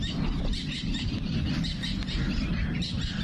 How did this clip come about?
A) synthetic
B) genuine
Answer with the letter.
B